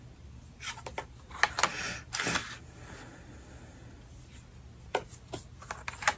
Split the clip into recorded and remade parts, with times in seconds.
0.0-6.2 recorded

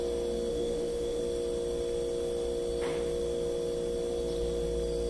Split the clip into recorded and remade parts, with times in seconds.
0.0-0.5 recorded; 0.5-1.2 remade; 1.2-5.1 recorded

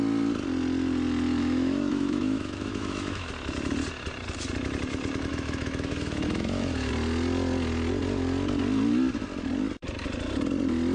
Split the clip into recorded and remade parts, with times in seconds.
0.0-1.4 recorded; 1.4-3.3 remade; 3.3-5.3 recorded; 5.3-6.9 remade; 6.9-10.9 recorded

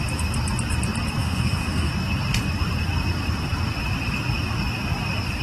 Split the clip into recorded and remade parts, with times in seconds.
0.0-1.2 recorded; 1.2-1.9 remade; 1.9-5.4 recorded

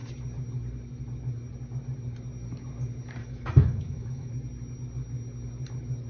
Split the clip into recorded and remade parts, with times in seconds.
0.0-3.2 recorded; 3.2-4.3 remade; 4.3-6.1 recorded